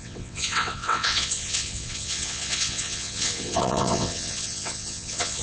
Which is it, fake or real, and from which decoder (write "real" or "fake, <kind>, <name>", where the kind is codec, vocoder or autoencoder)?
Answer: fake, vocoder, WaveNeXt